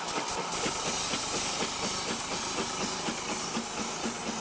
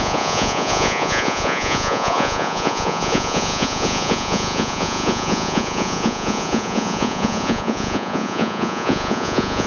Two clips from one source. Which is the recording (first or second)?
first